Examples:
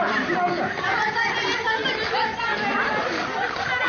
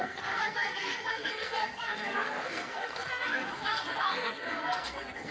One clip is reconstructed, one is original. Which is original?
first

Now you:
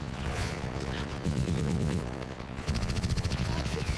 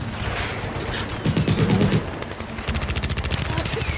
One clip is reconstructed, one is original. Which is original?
second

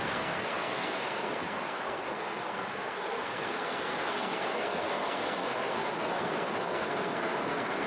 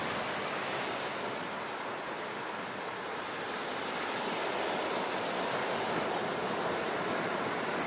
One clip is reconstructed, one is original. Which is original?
second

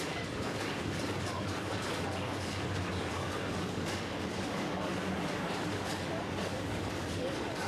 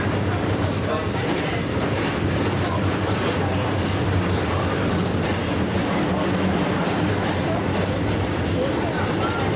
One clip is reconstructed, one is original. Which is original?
second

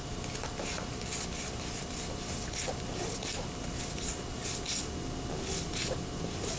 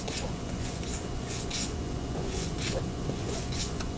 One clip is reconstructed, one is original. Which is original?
first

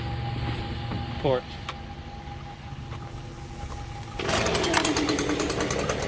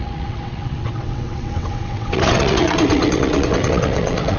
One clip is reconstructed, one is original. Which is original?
first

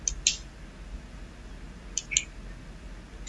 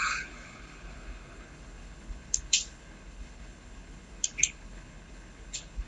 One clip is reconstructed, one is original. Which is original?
first